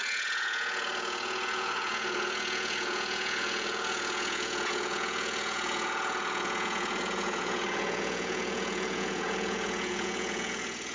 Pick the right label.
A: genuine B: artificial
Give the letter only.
B